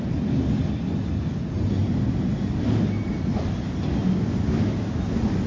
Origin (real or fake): real